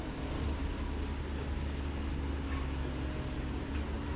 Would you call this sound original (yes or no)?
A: yes